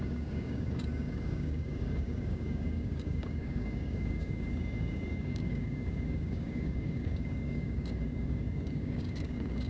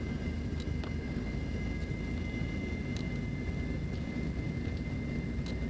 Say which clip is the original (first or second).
second